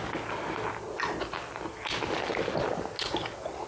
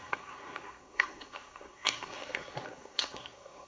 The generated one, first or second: second